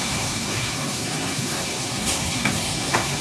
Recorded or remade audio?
remade